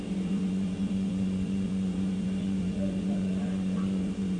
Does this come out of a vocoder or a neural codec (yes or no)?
yes